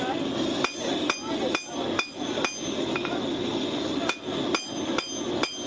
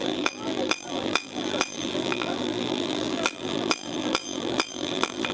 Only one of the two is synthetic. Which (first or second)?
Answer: second